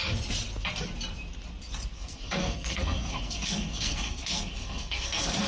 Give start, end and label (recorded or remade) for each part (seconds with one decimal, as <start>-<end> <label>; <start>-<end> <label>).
0.0-1.9 recorded; 1.9-5.5 remade